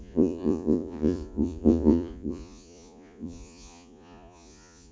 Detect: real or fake fake